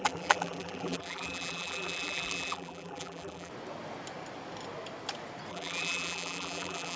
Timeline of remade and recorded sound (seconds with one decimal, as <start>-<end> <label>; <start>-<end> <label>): 0.0-3.5 remade; 3.5-5.5 recorded; 5.5-7.0 remade